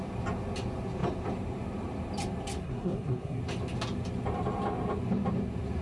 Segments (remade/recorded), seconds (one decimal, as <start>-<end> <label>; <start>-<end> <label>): 0.0-2.6 recorded; 2.6-3.4 remade; 3.4-5.8 recorded